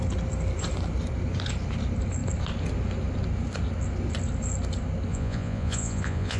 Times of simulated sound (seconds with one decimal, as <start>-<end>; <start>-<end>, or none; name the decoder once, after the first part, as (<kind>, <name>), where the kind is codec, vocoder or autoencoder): 5.1-6.4 (vocoder, Vocos)